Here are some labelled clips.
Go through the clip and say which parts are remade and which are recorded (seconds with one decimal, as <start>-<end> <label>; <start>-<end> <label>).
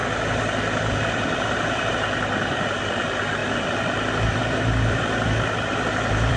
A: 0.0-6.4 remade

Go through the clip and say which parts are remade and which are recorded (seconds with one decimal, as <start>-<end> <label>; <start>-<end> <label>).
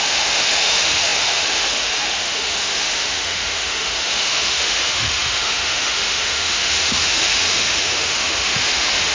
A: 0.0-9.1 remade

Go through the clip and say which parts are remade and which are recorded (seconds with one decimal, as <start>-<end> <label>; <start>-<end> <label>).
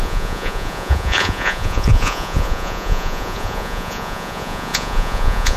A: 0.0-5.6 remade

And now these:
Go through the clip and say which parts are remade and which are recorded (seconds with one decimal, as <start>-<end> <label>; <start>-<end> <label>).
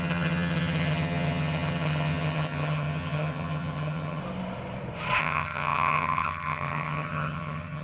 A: 0.0-4.2 remade; 4.2-5.2 recorded; 5.2-7.8 remade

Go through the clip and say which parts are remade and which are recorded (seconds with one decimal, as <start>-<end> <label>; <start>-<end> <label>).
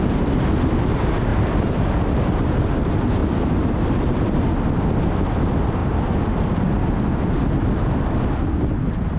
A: 0.0-1.3 recorded; 1.3-1.9 remade; 1.9-3.2 recorded; 3.2-4.3 remade; 4.3-5.8 recorded; 5.8-6.6 remade; 6.6-9.2 recorded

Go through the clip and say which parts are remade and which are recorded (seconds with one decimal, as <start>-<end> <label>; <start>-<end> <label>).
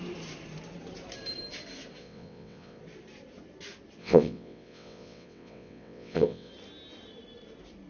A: 0.0-2.0 recorded; 2.0-2.8 remade; 2.8-4.0 recorded; 4.0-6.5 remade; 6.5-7.9 recorded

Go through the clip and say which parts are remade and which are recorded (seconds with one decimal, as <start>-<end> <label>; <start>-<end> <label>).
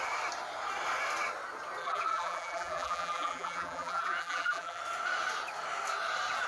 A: 0.0-1.8 recorded; 1.8-4.8 remade; 4.8-6.5 recorded